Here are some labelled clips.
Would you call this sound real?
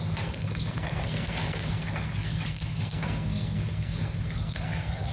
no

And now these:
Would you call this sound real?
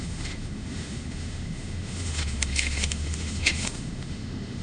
no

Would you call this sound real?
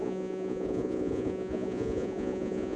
no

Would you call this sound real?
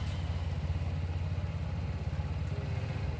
yes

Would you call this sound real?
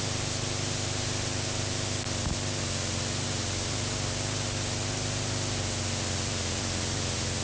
yes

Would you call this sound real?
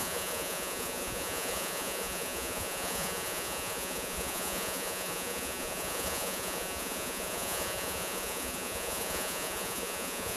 no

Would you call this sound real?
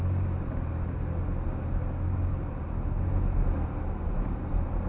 yes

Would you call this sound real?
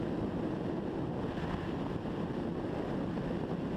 yes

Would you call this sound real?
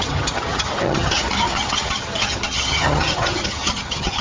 no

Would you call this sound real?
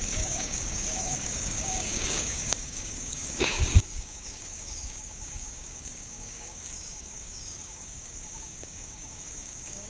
no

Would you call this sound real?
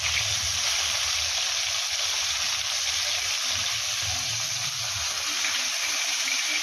yes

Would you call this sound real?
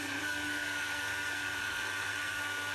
no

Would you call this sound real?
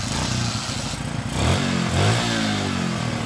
yes